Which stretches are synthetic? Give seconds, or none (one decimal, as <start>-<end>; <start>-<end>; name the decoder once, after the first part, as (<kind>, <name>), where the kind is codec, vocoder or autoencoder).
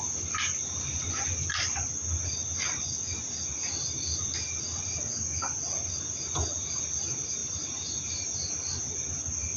7.4-7.9 (vocoder, BigVGAN v2)